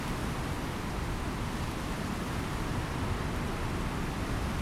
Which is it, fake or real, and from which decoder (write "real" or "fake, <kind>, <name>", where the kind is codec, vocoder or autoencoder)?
real